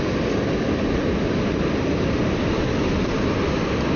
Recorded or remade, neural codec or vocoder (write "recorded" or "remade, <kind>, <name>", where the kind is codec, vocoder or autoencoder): recorded